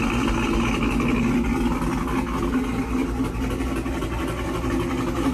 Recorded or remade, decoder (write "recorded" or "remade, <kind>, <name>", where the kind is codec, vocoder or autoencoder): recorded